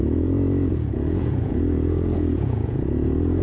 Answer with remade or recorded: remade